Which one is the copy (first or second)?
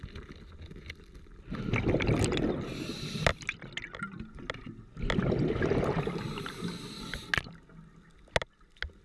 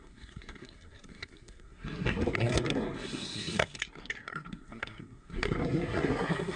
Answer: second